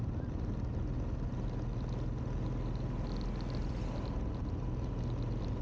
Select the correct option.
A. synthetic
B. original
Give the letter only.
B